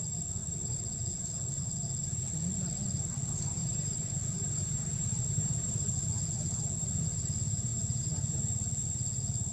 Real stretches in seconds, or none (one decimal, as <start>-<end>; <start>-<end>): 0.0-3.6; 5.9-7.7; 8.4-9.5